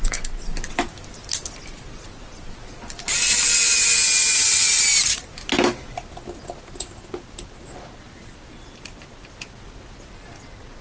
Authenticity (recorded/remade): recorded